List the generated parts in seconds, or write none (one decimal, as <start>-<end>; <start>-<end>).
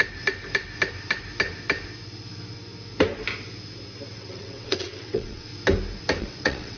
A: 4.1-5.5; 6.2-6.8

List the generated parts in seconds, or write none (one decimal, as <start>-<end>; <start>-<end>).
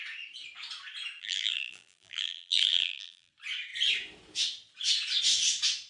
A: 1.2-3.3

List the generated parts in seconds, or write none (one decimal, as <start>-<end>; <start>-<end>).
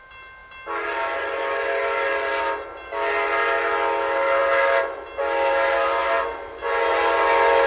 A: none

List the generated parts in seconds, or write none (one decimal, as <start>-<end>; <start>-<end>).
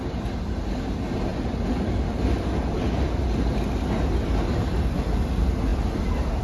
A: none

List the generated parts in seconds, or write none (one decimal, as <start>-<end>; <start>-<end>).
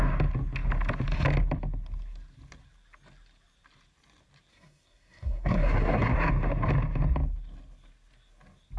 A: 4.5-6.3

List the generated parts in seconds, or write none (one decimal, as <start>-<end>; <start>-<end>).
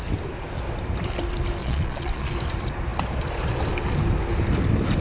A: 1.6-2.3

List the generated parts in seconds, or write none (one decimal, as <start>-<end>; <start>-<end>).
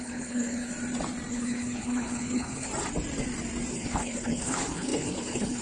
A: 0.0-0.7; 1.3-2.7; 3.7-5.6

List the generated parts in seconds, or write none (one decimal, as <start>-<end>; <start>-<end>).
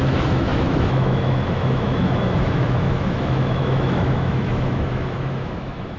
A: 0.0-6.0